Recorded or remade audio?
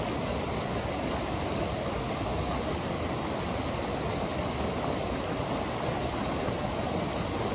recorded